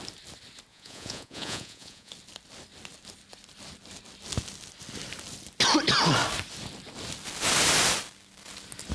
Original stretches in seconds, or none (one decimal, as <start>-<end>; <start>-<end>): 0.0-0.7; 2.1-8.9